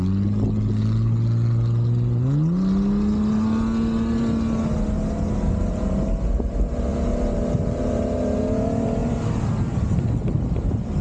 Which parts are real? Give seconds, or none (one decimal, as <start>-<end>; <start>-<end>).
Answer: 0.0-7.1; 8.4-9.0; 10.0-11.0